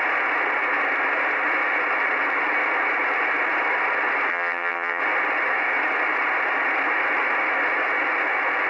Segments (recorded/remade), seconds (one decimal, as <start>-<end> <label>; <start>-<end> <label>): 0.0-4.3 recorded; 4.3-5.0 remade; 5.0-8.7 recorded